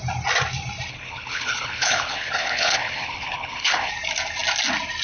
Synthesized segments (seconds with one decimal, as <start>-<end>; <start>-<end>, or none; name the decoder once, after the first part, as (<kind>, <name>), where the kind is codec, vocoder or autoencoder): 0.9-3.9 (codec, HILCodec)